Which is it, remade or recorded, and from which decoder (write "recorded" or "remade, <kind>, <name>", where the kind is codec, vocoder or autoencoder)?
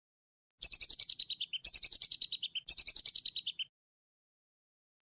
recorded